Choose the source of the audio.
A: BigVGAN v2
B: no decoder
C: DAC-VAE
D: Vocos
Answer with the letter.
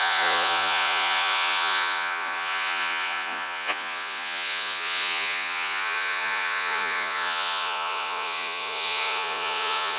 D